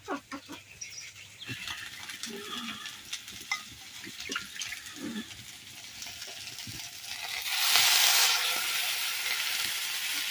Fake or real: real